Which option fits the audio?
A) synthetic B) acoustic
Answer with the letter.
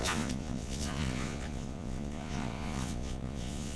A